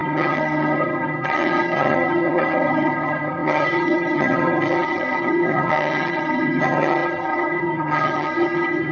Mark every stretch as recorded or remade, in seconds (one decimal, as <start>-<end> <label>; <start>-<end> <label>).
0.0-8.9 remade